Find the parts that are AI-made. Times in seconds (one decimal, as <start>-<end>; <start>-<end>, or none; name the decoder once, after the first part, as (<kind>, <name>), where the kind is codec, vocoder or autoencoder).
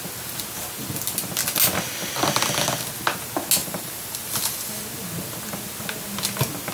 3.6-4.7 (vocoder, BigVGAN v2)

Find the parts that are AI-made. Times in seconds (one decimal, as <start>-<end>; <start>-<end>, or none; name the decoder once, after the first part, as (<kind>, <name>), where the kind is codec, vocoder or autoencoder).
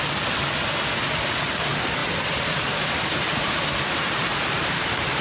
2.0-5.2 (vocoder, BigVGAN v2)